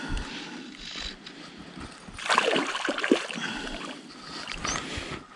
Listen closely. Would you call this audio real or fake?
real